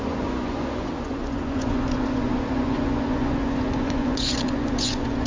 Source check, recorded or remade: remade